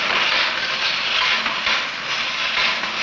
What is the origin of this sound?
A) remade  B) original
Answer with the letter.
B